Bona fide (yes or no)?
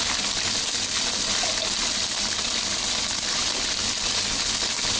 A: yes